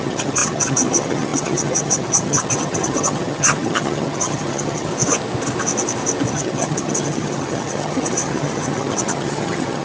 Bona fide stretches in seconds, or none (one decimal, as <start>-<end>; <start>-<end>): 4.9-6.3